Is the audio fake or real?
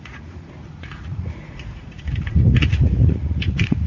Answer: fake